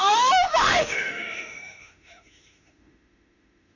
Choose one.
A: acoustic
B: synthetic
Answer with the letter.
B